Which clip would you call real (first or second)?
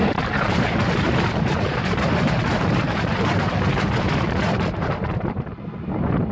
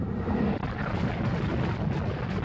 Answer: second